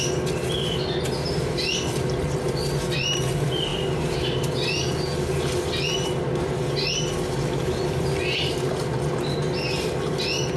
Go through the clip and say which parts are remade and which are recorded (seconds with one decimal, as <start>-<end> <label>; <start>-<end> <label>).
0.0-10.6 recorded